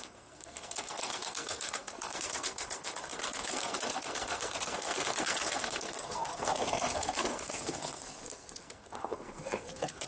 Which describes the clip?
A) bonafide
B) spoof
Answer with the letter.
B